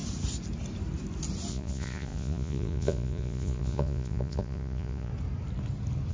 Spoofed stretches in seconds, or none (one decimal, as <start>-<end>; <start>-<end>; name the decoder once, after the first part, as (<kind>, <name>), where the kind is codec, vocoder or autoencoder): 1.5-5.1 (vocoder, Vocos)